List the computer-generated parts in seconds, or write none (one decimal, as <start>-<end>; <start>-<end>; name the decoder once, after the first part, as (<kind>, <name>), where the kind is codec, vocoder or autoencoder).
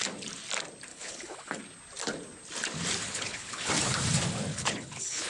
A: 0.9-1.6 (codec, HILCodec); 3.0-3.7; 4.5-5.3